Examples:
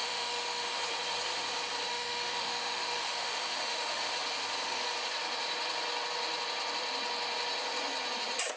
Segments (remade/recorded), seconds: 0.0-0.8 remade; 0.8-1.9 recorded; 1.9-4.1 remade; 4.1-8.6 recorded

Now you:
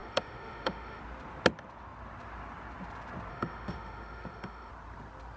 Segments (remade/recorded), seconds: 0.0-1.0 remade; 1.0-3.3 recorded; 3.3-4.7 remade; 4.7-5.4 recorded

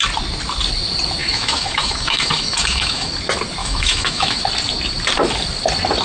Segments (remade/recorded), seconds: 0.0-1.2 recorded; 1.2-3.1 remade; 3.1-3.6 recorded; 3.6-4.4 remade; 4.4-6.0 recorded